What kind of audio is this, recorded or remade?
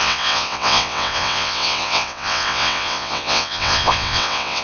remade